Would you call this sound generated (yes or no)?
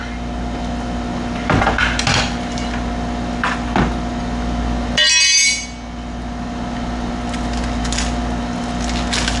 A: no